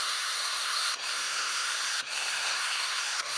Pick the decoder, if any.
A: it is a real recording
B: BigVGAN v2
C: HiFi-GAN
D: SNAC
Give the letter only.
D